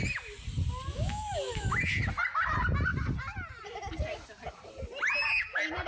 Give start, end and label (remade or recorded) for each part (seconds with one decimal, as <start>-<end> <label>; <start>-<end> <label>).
0.0-0.9 recorded; 0.9-1.9 remade; 1.9-5.9 recorded